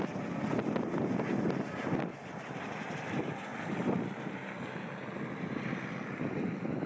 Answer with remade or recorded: recorded